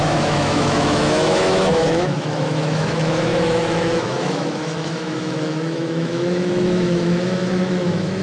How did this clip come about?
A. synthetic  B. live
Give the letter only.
A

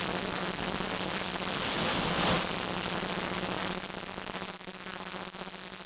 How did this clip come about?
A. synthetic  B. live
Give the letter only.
B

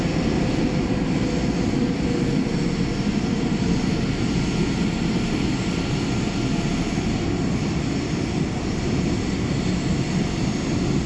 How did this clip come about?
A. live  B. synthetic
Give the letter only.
A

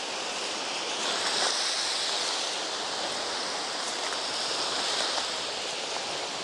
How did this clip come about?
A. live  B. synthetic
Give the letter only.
A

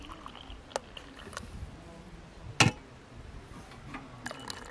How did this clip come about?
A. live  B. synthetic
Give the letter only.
A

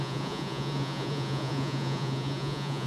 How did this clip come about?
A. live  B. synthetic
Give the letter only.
B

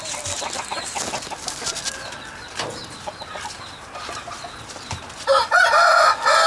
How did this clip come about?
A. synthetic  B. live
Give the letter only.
B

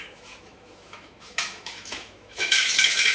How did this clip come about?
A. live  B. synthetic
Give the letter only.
B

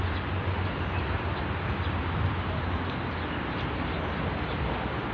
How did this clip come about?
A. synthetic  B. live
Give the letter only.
B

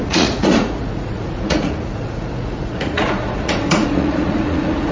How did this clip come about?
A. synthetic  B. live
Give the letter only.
A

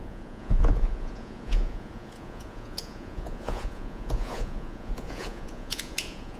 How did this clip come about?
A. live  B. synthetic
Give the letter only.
B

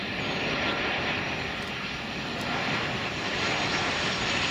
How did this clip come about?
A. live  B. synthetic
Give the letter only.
A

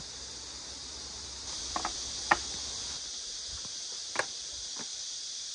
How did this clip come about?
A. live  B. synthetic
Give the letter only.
A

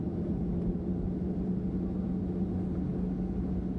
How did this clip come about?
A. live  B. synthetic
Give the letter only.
A